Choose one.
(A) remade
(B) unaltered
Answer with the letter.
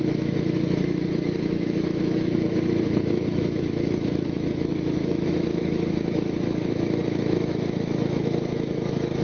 A